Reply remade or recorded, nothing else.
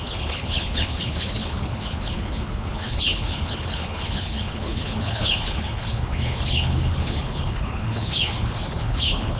remade